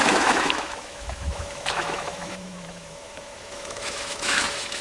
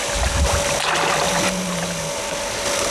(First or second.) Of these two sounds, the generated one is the first